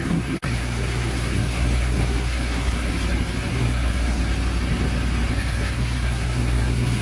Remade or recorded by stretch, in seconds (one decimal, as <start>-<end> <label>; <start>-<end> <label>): 0.0-2.9 remade; 2.9-3.5 recorded; 3.5-4.2 remade; 4.2-5.3 recorded; 5.3-7.0 remade